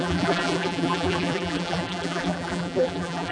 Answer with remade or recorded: remade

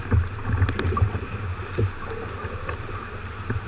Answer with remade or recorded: recorded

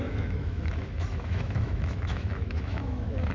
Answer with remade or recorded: remade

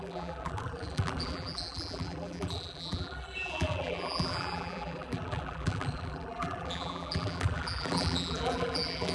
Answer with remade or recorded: remade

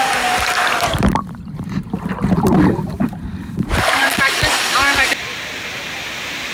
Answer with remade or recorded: remade